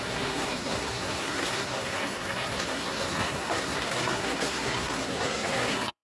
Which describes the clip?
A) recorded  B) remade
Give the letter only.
B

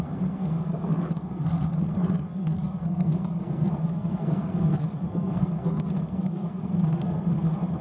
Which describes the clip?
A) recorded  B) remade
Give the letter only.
B